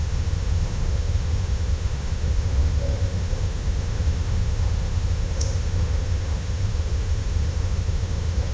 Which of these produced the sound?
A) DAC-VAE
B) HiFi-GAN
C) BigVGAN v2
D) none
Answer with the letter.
A